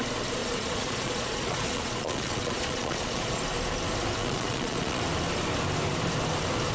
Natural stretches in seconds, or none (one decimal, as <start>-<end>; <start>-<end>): 0.0-0.4; 3.4-4.2; 5.0-6.7